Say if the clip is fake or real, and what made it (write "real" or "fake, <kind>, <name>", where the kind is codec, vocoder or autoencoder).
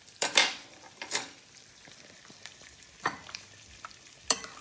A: fake, vocoder, BigVGAN v2